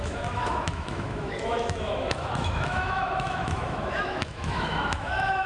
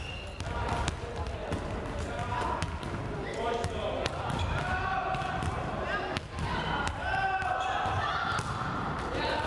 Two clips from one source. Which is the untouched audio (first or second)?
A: second